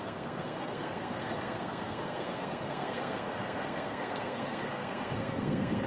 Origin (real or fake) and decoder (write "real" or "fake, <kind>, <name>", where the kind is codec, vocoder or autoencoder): fake, codec, SNAC